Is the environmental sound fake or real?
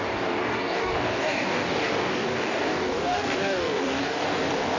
fake